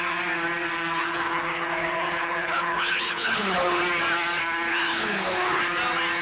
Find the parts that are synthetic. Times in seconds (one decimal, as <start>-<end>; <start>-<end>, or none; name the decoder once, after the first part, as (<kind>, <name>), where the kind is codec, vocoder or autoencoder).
1.0-3.8 (codec, HILCodec); 4.7-5.6